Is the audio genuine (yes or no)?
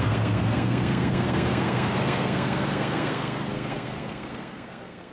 no